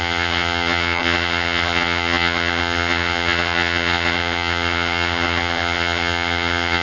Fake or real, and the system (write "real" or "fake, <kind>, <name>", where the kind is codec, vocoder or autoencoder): fake, vocoder, HiFi-GAN